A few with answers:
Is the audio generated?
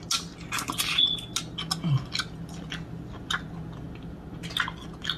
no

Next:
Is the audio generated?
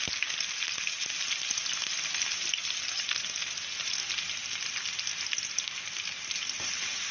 no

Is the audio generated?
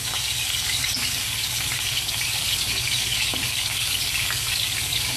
yes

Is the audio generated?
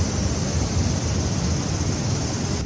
no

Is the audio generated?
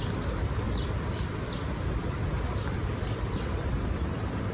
no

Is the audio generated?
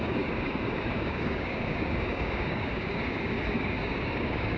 yes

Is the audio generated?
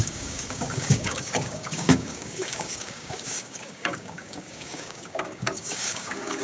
yes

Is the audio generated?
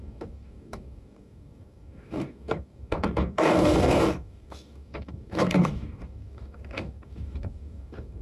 yes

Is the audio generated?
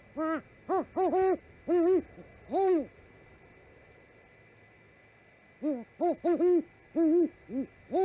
no